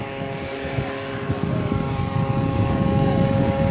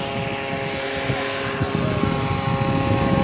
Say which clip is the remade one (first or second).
first